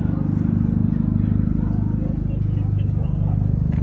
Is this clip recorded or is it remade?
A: recorded